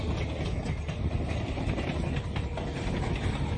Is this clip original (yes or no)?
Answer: yes